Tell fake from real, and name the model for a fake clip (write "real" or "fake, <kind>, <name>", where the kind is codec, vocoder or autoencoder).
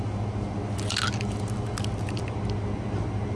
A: real